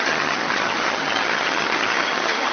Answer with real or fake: fake